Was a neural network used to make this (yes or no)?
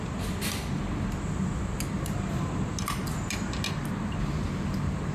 no